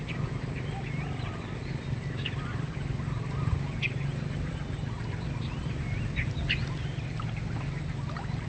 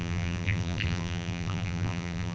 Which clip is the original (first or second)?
first